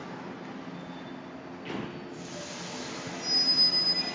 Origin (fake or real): real